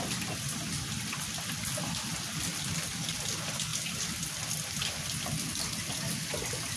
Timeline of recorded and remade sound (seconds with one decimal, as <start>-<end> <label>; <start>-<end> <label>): 0.0-6.8 recorded